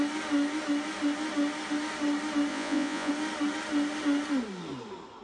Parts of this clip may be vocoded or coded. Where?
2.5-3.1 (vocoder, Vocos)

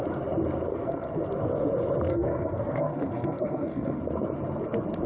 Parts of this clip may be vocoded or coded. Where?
0.7-1.3 (codec, SNAC); 2.1-4.0

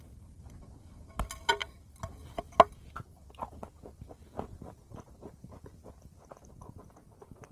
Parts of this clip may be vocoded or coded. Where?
none